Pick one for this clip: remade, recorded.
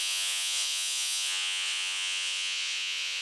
remade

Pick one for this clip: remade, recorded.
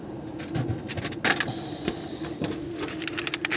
recorded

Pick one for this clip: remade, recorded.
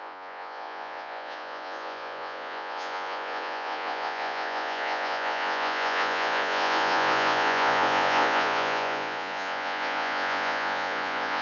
remade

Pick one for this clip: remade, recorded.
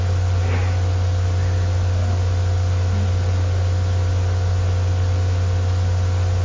recorded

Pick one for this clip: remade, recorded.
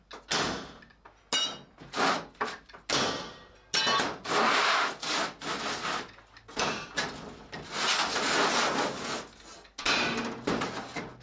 recorded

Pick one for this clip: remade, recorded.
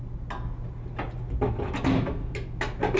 recorded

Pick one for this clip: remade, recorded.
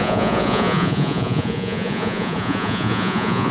remade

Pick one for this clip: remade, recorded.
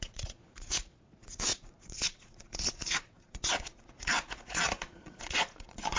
remade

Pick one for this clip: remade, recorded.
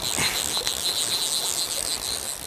recorded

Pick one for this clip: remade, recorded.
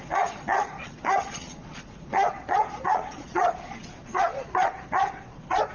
remade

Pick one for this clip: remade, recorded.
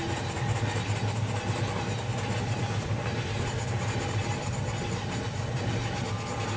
recorded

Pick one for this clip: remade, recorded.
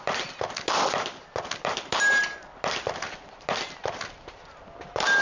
recorded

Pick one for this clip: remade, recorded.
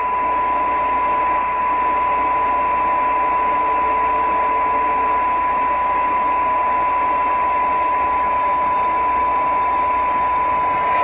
recorded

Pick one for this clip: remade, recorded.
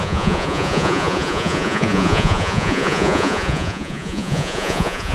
remade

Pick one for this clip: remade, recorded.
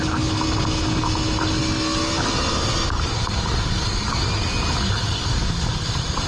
recorded